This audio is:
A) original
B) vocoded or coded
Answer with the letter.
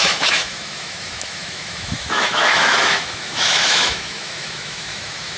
B